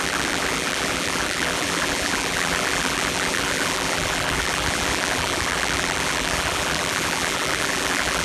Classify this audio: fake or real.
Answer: fake